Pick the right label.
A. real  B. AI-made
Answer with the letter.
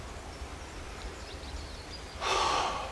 A